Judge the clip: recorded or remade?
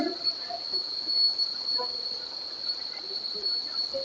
recorded